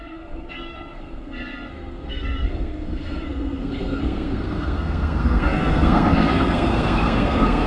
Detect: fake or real fake